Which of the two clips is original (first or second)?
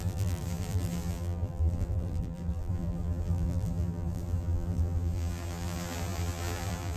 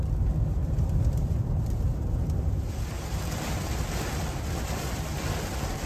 second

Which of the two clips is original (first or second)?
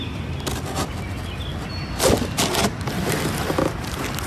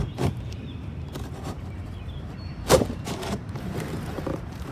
first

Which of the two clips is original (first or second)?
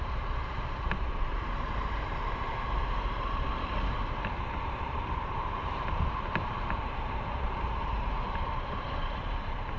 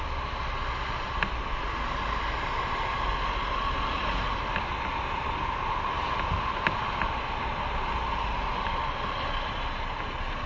second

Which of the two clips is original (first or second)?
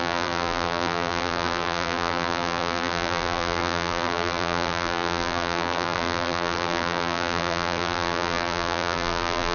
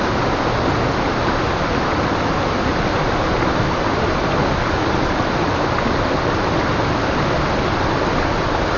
second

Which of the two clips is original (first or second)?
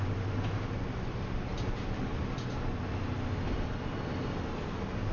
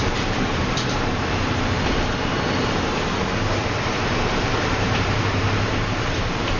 first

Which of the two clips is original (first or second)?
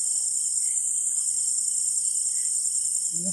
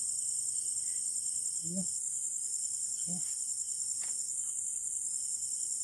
second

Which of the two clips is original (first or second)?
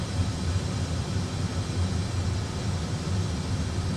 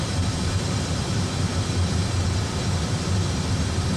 first